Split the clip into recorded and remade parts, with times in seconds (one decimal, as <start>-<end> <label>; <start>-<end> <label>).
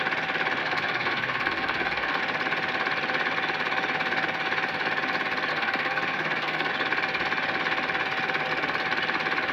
0.0-0.6 recorded; 0.6-2.2 remade; 2.2-5.5 recorded; 5.5-6.7 remade; 6.7-9.5 recorded